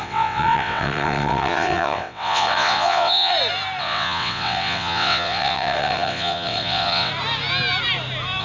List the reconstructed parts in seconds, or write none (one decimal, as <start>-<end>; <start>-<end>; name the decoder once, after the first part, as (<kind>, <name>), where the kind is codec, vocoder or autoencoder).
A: 0.0-3.3 (vocoder, WaveNeXt); 3.8-7.1